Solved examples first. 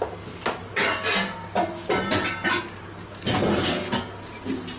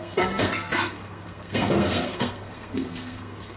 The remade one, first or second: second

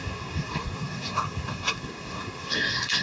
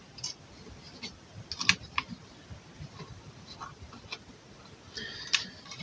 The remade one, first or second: first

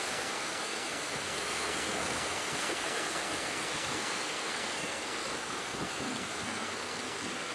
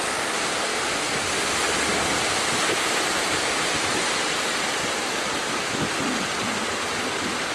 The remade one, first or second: first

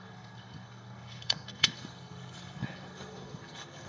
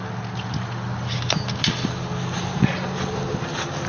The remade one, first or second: first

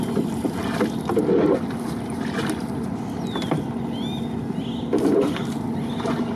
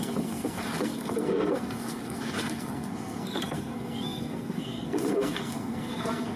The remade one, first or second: second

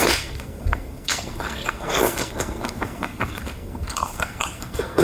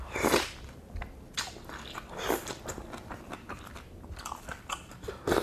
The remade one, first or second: first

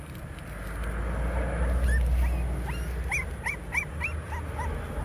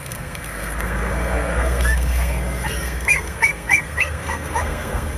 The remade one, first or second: second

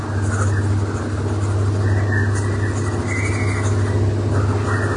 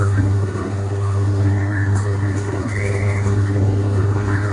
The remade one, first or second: second